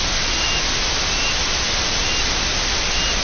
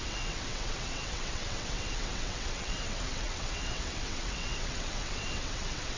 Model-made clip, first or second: second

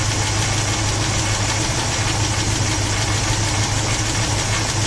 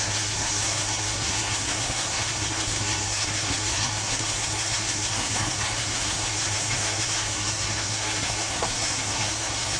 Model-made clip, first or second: second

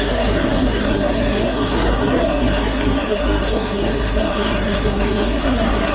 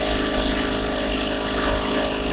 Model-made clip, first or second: first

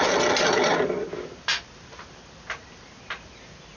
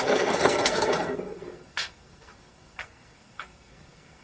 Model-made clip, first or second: second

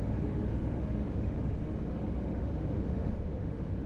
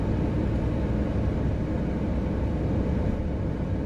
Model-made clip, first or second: first